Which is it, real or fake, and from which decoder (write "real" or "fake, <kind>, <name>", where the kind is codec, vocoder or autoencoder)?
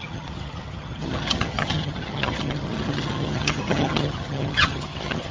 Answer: fake, vocoder, HiFi-GAN